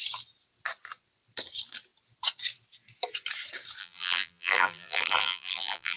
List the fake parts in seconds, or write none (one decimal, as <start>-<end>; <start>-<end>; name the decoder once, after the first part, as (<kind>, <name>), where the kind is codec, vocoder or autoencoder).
3.8-6.0 (vocoder, BigVGAN v2)